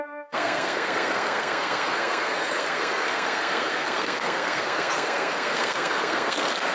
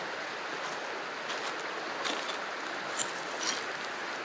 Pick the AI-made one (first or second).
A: first